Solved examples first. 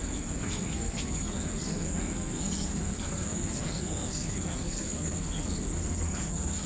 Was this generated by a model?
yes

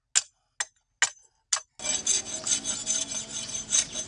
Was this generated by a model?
no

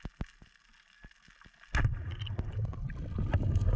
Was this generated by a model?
no